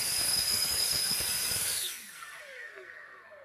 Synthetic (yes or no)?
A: yes